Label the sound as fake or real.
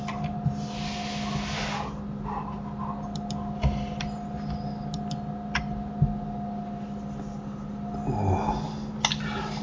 real